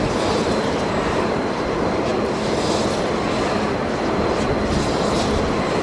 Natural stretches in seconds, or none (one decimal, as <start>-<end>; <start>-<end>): 2.1-5.8